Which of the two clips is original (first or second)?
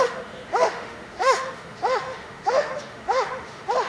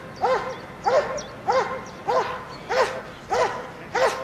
second